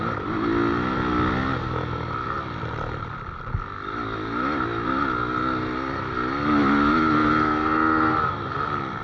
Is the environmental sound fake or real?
real